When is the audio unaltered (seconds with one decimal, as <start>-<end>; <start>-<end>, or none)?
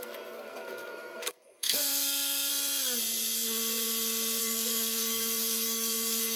2.5-4.4